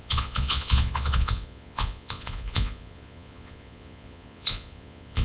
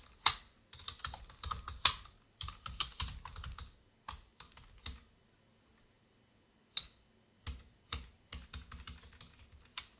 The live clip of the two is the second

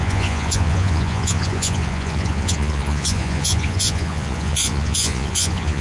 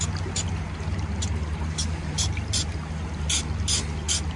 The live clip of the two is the second